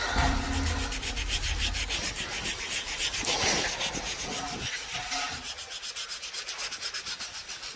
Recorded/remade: recorded